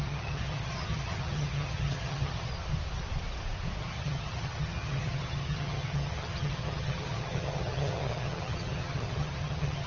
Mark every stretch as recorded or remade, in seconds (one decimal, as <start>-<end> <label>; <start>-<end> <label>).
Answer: 0.0-2.5 remade; 2.5-3.8 recorded; 3.8-9.9 remade